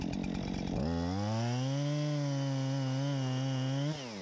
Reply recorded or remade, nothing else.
recorded